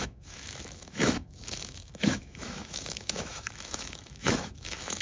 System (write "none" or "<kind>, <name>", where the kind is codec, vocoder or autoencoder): autoencoder, DAC-VAE